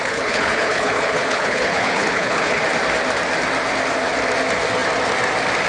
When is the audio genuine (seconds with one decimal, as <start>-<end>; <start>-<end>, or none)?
2.6-5.7